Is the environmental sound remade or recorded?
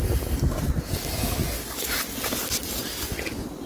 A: recorded